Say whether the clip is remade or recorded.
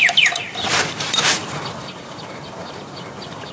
remade